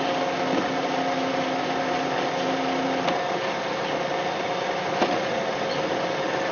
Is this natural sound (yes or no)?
yes